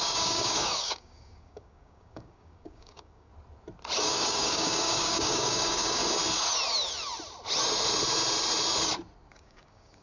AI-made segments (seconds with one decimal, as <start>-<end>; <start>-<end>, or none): 0.0-3.3; 4.0-6.0; 9.3-10.0